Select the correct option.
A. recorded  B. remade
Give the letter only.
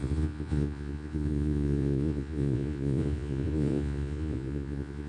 B